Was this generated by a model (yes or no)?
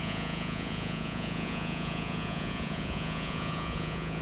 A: yes